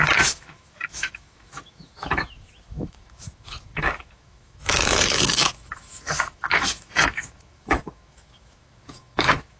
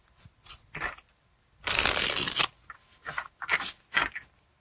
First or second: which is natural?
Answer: second